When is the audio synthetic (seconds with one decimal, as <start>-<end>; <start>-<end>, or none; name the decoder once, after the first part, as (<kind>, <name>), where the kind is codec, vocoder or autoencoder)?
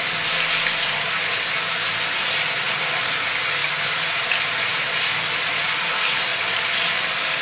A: none